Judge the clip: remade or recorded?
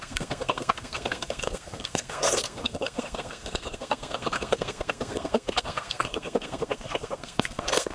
remade